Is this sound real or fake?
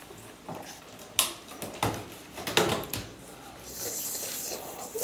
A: real